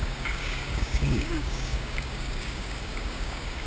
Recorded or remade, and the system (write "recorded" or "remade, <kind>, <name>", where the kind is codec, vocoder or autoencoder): remade, codec, DAC